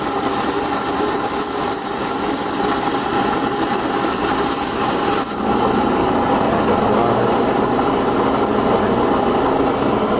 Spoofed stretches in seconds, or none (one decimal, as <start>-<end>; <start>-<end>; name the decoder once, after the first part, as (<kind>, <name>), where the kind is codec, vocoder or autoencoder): none